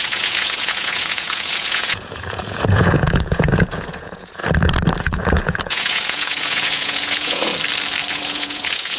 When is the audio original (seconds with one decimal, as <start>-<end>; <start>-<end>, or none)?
4.4-5.0; 7.5-8.1